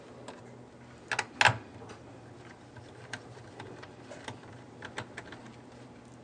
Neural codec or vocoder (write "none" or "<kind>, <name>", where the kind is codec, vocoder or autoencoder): none